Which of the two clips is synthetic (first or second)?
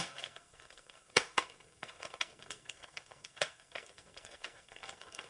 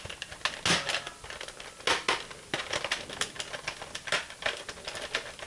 first